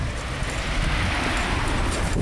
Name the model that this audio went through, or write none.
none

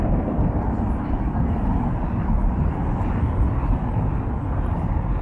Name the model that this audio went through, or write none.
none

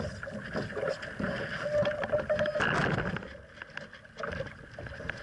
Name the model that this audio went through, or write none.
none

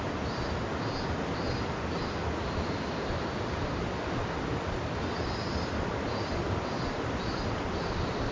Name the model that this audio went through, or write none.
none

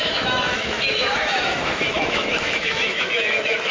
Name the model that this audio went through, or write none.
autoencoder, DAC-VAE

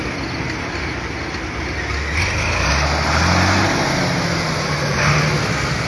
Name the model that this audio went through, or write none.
none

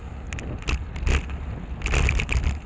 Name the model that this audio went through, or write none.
none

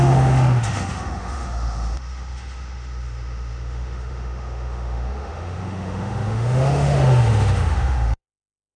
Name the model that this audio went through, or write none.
autoencoder, DAC-VAE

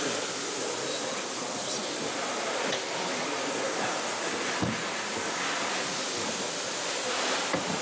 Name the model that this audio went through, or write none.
none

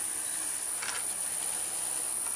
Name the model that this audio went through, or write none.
none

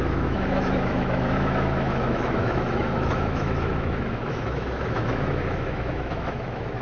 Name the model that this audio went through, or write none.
autoencoder, DAC-VAE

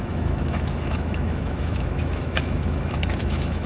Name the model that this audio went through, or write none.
autoencoder, DAC-VAE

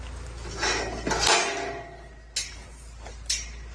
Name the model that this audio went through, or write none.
none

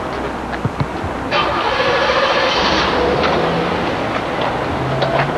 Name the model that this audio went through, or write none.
none